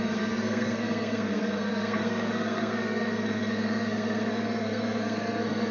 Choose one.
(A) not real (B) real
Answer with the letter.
A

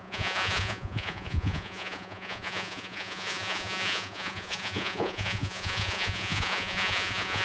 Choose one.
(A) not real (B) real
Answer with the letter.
A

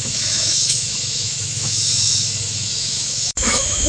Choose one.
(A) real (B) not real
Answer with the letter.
B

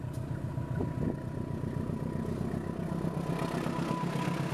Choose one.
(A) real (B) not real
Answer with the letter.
A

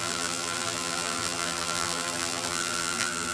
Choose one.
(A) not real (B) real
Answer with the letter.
A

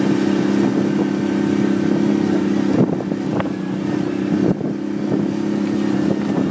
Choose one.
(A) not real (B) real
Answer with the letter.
B